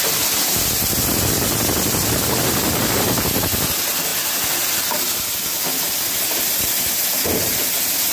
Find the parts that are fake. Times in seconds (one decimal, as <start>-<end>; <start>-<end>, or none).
none